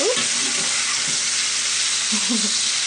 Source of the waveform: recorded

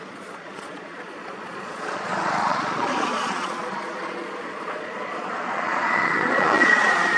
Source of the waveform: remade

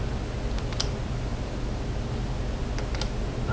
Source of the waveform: recorded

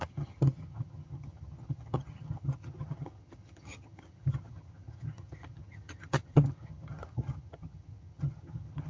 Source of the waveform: remade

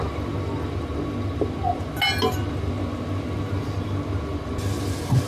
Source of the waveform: recorded